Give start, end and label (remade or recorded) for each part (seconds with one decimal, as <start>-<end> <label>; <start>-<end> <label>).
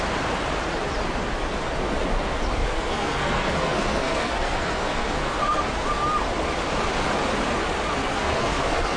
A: 0.0-2.6 recorded; 2.6-5.6 remade; 5.6-8.0 recorded; 8.0-9.0 remade